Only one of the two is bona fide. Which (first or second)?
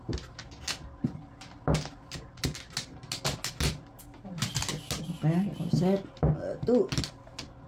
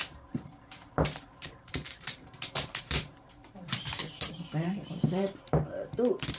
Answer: first